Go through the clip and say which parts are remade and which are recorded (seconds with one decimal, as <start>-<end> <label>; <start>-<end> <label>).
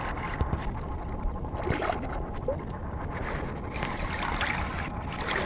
0.0-5.5 recorded